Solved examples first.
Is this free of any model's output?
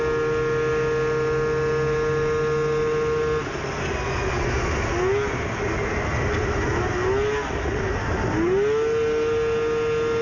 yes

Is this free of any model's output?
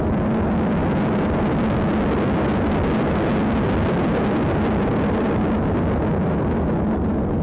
yes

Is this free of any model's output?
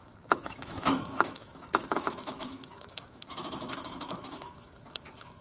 no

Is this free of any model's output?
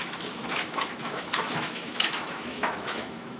no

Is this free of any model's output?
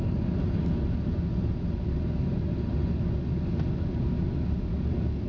yes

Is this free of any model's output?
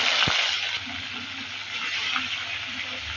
yes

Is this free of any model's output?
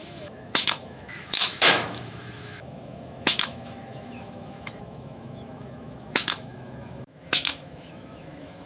no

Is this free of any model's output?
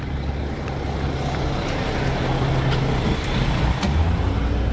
yes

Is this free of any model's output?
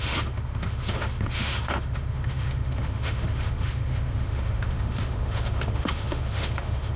no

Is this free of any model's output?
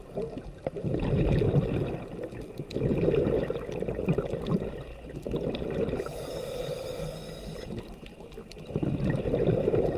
yes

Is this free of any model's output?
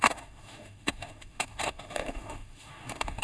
no